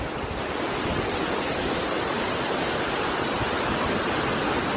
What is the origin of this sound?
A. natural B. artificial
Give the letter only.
A